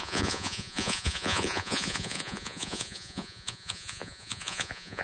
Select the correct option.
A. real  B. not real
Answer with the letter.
B